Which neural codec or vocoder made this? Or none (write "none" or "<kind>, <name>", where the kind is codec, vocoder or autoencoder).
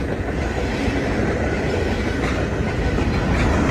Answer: none